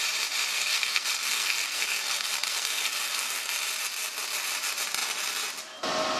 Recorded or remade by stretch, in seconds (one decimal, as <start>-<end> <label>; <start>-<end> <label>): 0.0-0.5 recorded; 0.5-3.6 remade; 3.6-6.2 recorded